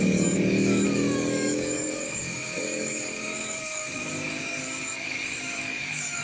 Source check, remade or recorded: remade